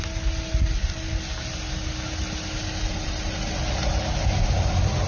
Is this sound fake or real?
real